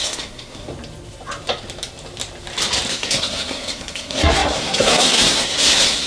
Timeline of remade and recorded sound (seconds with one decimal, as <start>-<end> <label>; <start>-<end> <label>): 0.0-0.7 remade; 0.7-2.9 recorded; 2.9-6.1 remade